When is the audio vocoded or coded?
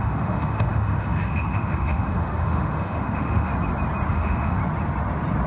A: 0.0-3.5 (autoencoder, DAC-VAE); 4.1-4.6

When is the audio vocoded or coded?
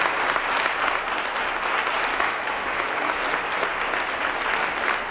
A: 2.1-3.2 (autoencoder, DAC-VAE)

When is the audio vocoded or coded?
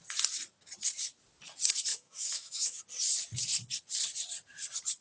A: 1.9-2.8 (autoencoder, DAC-VAE)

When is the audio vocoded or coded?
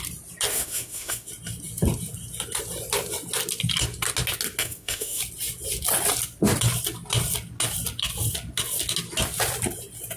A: 0.5-1.3 (autoencoder, DAC-VAE); 4.6-5.2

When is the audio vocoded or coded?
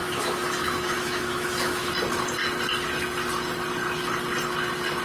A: 0.0-1.9 (autoencoder, DAC-VAE)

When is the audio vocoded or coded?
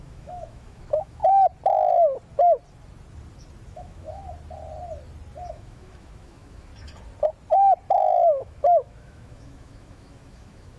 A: 0.0-1.2 (autoencoder, DAC-VAE); 3.7-4.2; 5.5-6.7; 7.9-10.8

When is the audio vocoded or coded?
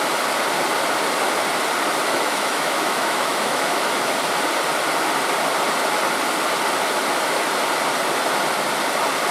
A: 2.1-4.1 (autoencoder, DAC-VAE)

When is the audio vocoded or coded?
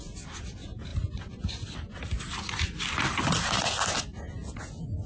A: none